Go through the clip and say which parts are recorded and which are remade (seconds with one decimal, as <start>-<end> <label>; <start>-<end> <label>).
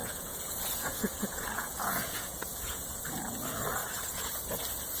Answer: 0.0-3.0 remade; 3.0-3.8 recorded; 3.8-4.4 remade; 4.4-5.0 recorded